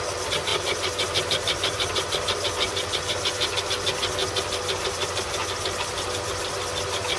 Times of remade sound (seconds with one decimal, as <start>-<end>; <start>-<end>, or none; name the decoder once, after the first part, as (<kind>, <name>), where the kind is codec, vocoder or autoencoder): none